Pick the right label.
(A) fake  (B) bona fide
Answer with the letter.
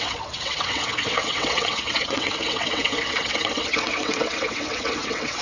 A